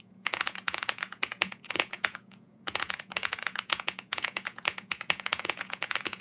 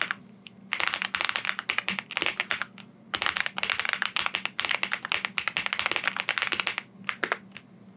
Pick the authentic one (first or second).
second